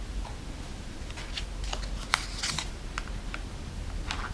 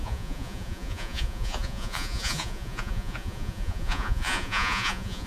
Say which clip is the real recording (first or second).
first